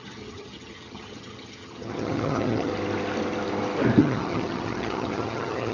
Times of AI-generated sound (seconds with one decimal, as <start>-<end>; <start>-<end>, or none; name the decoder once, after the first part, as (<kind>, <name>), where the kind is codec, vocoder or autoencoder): 0.0-2.7 (vocoder, HiFi-GAN); 4.0-5.7